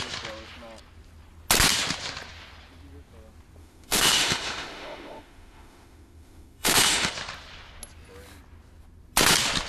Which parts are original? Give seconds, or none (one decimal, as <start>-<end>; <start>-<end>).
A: 0.0-3.6; 7.1-9.7